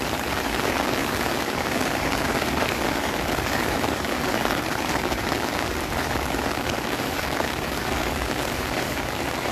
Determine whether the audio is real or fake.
fake